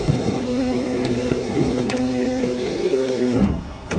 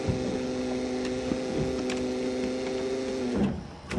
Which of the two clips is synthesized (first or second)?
first